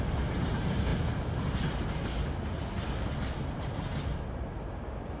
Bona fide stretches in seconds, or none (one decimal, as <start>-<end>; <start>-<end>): 0.0-5.2